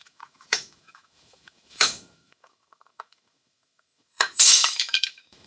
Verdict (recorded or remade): remade